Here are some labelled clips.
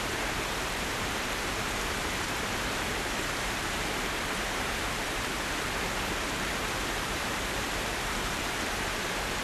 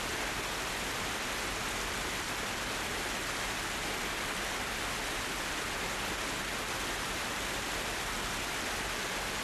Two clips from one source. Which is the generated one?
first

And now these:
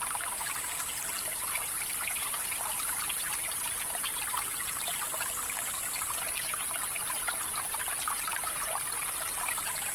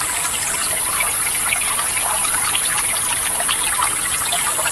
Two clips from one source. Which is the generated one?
first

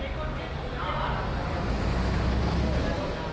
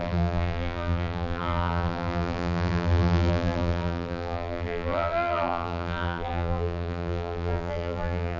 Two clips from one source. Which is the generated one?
second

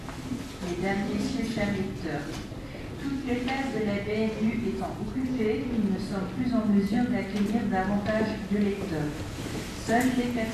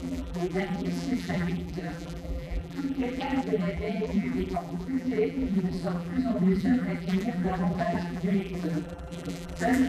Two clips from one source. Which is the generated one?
second